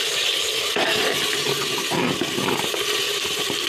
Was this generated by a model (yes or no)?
no